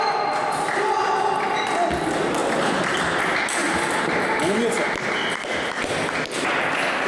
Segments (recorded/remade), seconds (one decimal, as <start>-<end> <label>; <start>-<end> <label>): 0.0-7.1 recorded